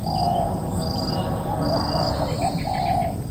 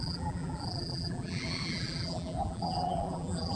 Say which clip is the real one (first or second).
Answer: first